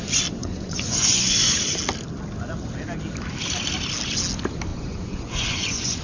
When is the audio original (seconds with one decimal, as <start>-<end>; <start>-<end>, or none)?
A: 0.0-0.4; 1.4-4.7